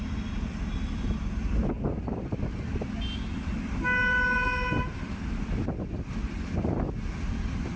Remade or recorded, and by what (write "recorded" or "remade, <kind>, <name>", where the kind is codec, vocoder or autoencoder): recorded